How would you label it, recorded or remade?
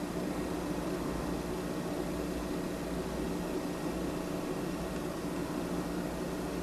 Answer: recorded